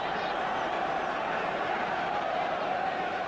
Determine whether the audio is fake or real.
fake